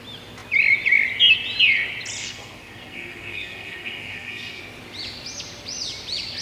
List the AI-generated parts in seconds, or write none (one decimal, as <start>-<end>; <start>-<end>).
2.2-4.6